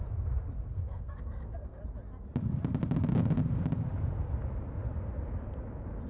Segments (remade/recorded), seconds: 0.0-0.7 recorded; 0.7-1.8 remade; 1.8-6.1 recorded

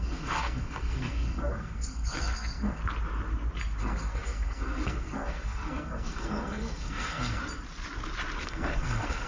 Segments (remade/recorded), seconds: 0.0-2.8 remade; 2.8-3.8 recorded; 3.8-7.4 remade; 7.4-8.4 recorded; 8.4-9.3 remade